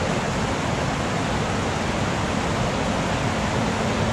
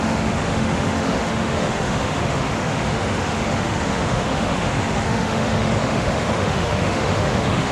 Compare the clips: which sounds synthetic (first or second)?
second